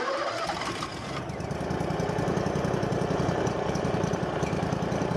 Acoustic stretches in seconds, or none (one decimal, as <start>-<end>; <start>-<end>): 0.9-1.6